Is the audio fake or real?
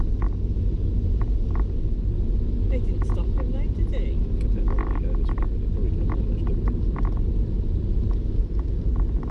real